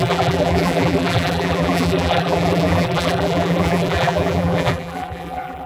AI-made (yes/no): yes